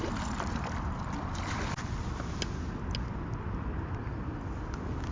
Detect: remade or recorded recorded